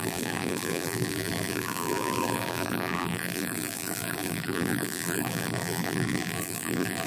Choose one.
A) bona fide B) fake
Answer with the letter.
B